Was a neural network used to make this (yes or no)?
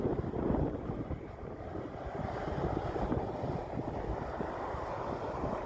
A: no